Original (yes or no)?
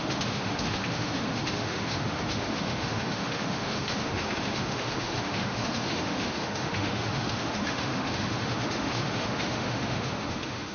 no